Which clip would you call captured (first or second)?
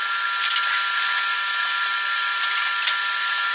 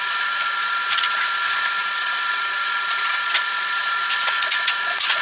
first